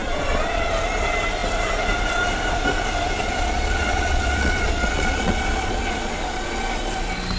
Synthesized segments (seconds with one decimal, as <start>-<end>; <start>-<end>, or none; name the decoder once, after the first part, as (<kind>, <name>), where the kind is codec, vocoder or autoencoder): 0.0-0.7 (vocoder, Vocos); 3.2-6.6